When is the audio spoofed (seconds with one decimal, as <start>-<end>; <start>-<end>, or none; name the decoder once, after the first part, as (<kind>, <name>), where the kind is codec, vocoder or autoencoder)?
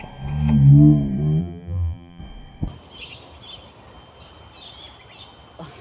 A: 1.4-2.2 (vocoder, BigVGAN v2)